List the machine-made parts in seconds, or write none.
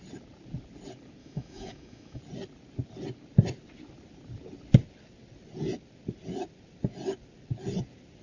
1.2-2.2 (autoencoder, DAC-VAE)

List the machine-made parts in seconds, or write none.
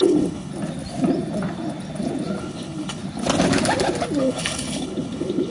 0.0-0.5 (codec, HILCodec); 2.4-3.0; 4.2-5.5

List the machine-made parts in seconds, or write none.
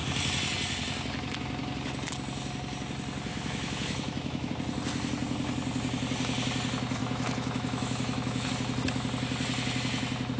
3.3-4.5 (autoencoder, DAC-VAE); 7.0-8.5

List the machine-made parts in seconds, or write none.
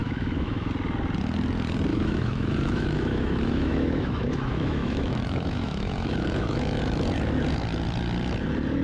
0.0-0.7 (autoencoder, DAC-VAE); 1.9-6.8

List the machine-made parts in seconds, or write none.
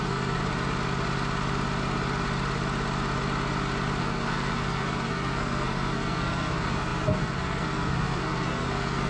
0.0-0.4 (codec, SNAC); 4.0-9.1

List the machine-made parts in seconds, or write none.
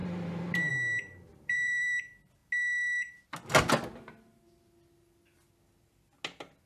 0.0-0.7 (vocoder, BigVGAN v2); 1.3-2.0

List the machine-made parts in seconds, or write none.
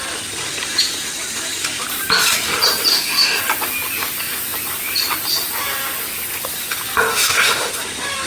2.9-3.4 (autoencoder, DAC-VAE); 7.1-7.7